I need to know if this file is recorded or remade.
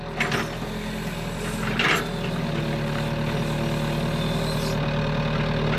recorded